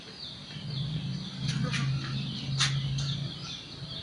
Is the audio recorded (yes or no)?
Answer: yes